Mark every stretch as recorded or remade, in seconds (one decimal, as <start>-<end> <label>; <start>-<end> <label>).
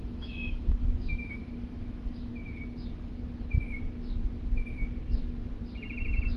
0.0-2.3 remade; 2.3-6.4 recorded